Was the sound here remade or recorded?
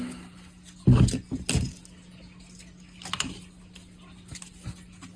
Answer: recorded